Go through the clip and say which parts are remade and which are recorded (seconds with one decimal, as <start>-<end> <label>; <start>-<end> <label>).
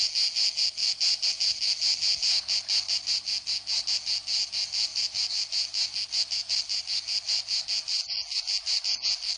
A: 0.0-9.4 recorded